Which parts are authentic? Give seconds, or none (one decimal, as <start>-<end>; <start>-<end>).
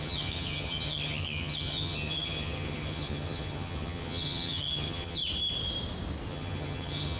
5.2-6.3